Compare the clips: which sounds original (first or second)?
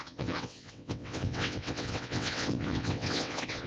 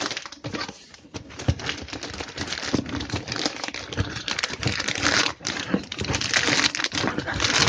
second